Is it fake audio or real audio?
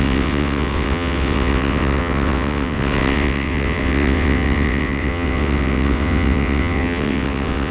fake